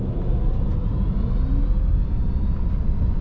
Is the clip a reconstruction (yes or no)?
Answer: no